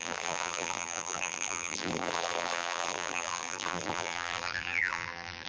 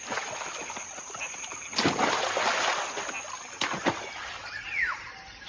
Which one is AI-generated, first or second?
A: first